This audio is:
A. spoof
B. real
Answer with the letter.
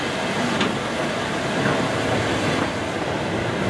B